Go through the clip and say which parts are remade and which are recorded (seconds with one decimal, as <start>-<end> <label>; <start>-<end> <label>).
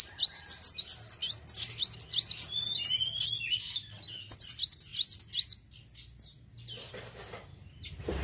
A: 0.0-8.2 recorded